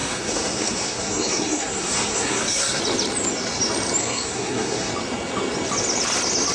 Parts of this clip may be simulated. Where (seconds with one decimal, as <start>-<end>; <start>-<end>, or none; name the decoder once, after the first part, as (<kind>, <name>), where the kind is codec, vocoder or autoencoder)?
0.0-2.8 (codec, SNAC); 4.0-4.9